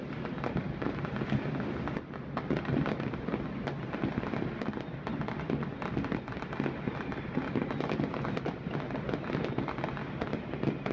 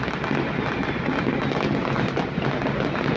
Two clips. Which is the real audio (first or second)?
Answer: second